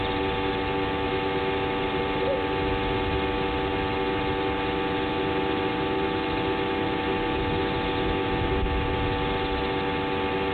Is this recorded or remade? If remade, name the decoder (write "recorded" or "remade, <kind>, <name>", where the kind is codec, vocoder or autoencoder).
recorded